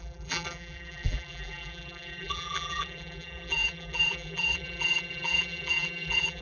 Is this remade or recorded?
remade